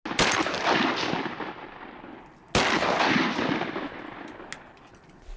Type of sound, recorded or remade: recorded